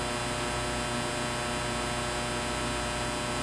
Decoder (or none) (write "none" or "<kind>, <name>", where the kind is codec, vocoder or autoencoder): none